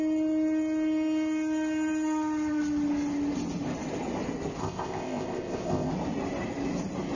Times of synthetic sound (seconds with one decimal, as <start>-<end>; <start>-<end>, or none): 4.6-5.9